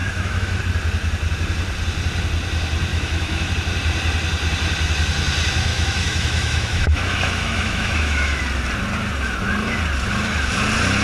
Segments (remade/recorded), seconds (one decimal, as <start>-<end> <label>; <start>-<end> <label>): 0.0-0.6 remade; 0.6-2.9 recorded; 2.9-3.5 remade; 3.5-5.7 recorded; 5.7-8.4 remade; 8.4-11.0 recorded